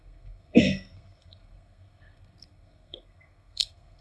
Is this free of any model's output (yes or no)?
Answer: no